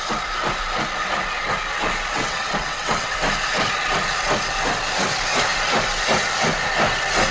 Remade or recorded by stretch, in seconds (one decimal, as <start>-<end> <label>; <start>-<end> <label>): 0.0-2.1 recorded; 2.1-3.1 remade; 3.1-7.3 recorded